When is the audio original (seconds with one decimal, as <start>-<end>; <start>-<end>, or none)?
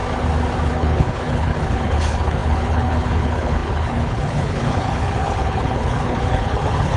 0.0-0.7